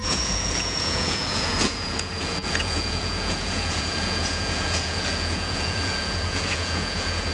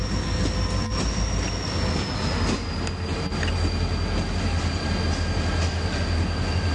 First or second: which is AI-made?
first